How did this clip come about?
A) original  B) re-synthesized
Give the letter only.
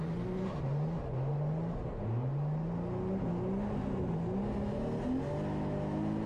A